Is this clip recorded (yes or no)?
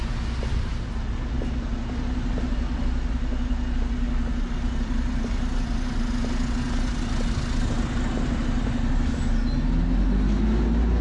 yes